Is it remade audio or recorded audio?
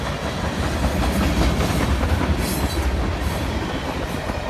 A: recorded